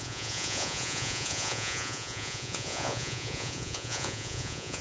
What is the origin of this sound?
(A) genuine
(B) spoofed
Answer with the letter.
B